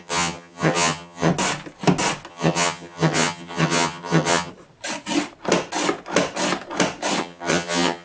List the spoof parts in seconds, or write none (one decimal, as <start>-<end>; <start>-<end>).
0.0-1.3; 2.3-4.5; 7.2-8.0